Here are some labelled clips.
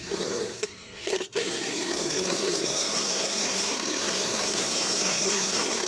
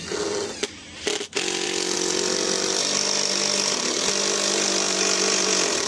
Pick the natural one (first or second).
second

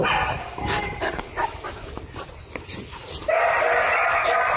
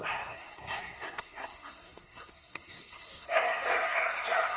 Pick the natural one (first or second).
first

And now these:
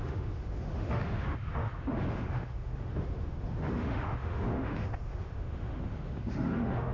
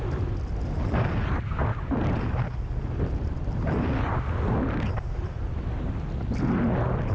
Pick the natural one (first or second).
second